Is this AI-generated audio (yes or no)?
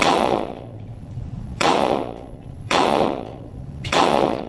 yes